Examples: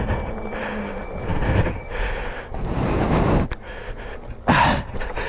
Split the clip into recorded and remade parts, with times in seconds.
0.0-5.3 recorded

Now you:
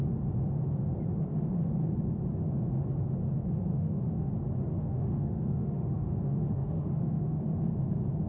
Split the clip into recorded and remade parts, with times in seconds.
0.0-3.7 recorded; 3.7-4.3 remade; 4.3-4.7 recorded; 4.7-7.4 remade; 7.4-8.3 recorded

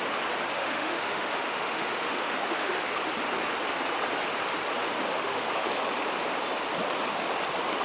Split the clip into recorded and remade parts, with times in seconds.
0.0-0.5 recorded; 0.5-2.8 remade; 2.8-4.9 recorded; 4.9-5.7 remade; 5.7-7.8 recorded

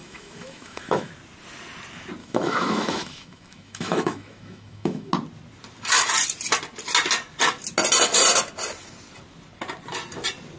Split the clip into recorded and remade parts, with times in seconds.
0.0-1.1 remade; 1.1-2.2 recorded; 2.2-5.1 remade; 5.1-10.6 recorded

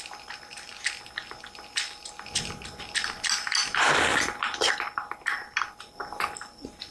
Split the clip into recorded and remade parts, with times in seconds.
0.0-6.9 recorded

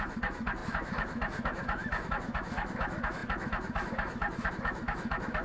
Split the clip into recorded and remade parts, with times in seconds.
0.0-5.4 remade